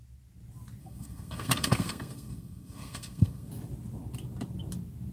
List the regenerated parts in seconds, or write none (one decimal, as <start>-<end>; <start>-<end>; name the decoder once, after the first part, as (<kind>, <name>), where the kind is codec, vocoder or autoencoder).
0.8-3.5 (codec, SNAC)